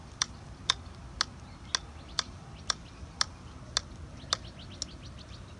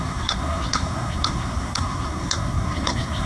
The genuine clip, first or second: first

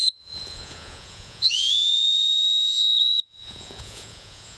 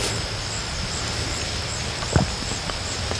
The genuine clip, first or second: second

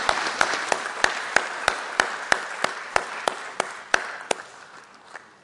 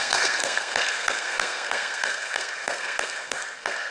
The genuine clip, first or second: first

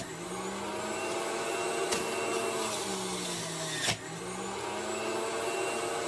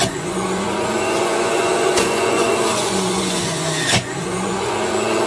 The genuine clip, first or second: first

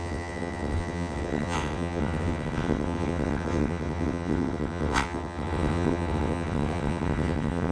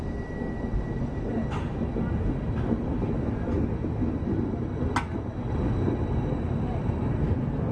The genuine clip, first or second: second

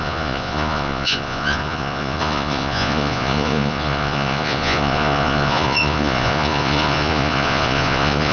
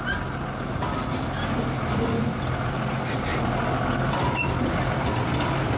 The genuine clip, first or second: second